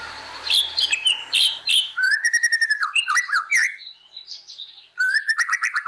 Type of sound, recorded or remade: remade